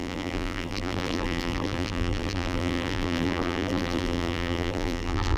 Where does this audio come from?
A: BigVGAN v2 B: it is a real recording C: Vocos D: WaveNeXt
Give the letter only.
A